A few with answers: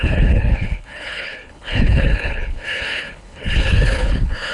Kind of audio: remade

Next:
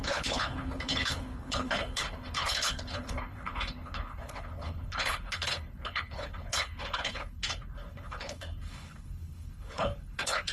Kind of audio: remade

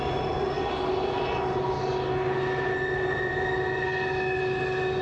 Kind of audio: recorded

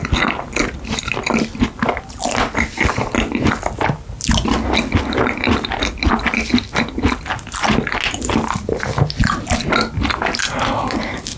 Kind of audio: recorded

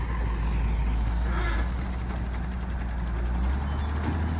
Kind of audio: recorded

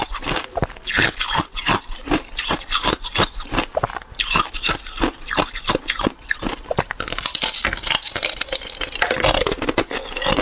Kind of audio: recorded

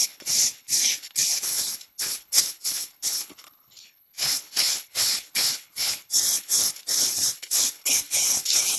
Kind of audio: remade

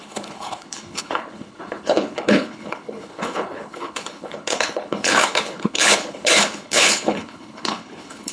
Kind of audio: remade